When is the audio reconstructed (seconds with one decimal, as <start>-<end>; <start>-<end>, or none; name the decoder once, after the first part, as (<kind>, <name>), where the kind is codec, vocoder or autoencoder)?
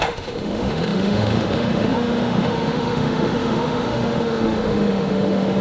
0.0-5.6 (autoencoder, DAC-VAE)